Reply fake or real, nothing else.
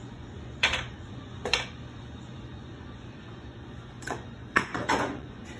fake